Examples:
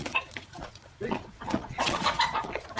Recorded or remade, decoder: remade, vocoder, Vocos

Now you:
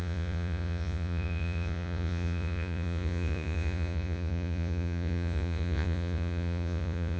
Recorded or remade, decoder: remade, vocoder, Vocos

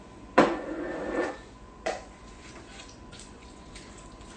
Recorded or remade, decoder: remade, vocoder, Vocos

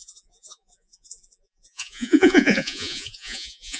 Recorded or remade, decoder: remade, vocoder, Vocos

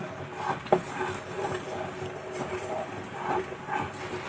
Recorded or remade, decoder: recorded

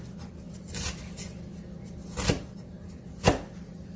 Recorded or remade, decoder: recorded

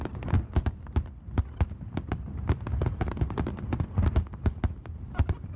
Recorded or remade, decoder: recorded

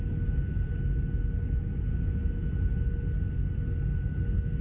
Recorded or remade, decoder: recorded